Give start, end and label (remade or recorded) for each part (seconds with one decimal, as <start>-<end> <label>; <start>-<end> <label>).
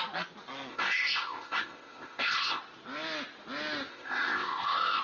0.0-0.7 recorded; 0.7-2.6 remade; 2.6-3.9 recorded; 3.9-5.0 remade